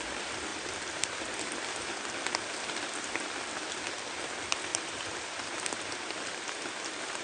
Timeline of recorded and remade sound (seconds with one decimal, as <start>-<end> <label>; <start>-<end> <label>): 0.0-0.5 recorded; 0.5-1.2 remade; 1.2-4.7 recorded; 4.7-5.6 remade; 5.6-7.2 recorded